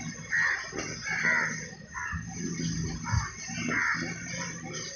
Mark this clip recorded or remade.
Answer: recorded